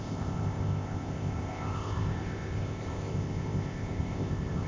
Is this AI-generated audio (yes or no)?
yes